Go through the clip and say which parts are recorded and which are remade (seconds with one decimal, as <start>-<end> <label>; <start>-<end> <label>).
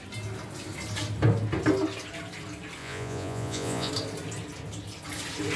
0.0-2.8 recorded; 2.8-3.9 remade; 3.9-5.6 recorded